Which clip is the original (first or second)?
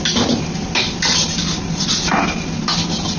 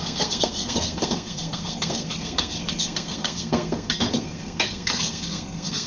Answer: first